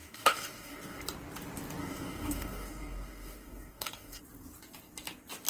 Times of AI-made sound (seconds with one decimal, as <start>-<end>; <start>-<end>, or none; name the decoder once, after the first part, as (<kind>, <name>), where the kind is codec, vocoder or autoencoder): 0.0-1.0 (codec, DAC); 1.8-4.2